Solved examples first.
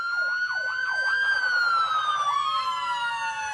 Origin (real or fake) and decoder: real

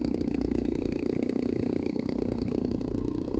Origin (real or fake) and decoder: fake, codec, SNAC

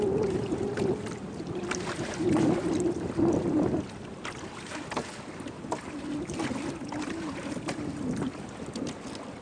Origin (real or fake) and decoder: real